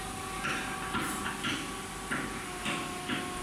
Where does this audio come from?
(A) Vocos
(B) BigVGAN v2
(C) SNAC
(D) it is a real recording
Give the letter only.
D